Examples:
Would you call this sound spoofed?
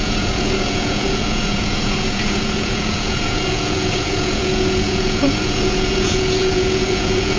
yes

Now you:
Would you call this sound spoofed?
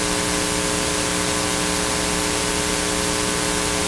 no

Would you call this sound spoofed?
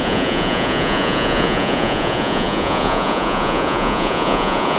yes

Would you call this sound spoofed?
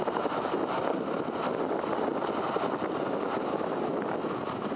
no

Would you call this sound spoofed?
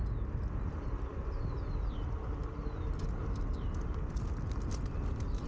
no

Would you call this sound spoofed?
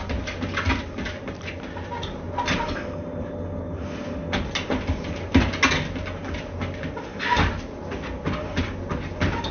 no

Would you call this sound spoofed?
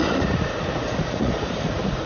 yes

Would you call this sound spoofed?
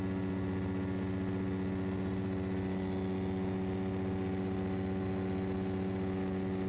no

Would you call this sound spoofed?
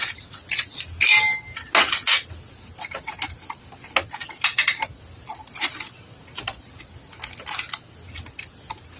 no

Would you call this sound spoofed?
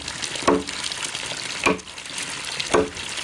no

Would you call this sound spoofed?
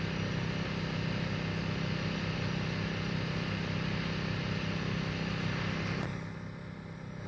no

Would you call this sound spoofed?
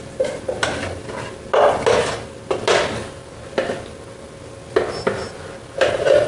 no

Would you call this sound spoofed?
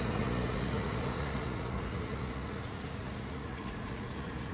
yes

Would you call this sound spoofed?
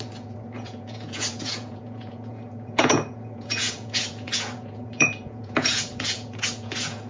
yes